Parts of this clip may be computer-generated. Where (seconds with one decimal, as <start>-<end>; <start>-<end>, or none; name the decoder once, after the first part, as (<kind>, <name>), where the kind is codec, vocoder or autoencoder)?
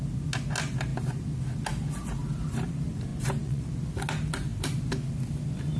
3.1-3.6 (vocoder, Vocos)